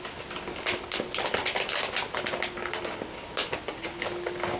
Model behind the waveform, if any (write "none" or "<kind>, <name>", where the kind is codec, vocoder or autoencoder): none